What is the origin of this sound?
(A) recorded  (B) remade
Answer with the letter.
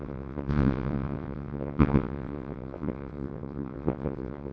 B